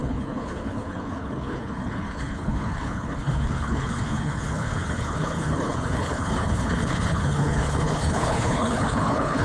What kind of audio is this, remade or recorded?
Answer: remade